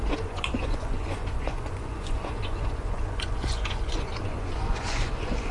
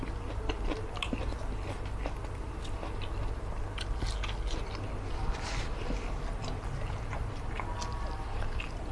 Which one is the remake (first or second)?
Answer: first